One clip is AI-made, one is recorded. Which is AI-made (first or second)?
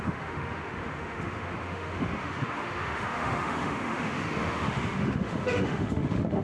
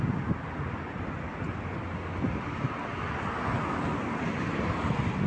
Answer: first